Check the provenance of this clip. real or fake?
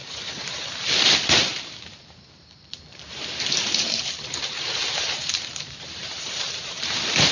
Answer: fake